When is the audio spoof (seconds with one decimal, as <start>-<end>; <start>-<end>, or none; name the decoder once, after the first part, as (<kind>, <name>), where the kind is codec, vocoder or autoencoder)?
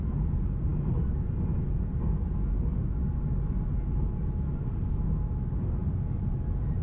none